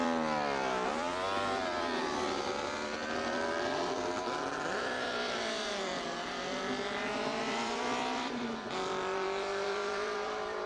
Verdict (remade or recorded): remade